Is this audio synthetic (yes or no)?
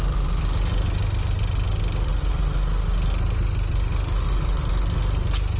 no